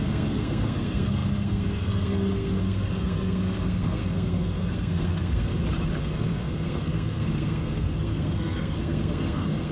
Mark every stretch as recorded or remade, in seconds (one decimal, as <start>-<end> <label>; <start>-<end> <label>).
0.0-5.5 remade; 5.5-6.0 recorded; 6.0-9.7 remade